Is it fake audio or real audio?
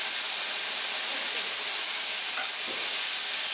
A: real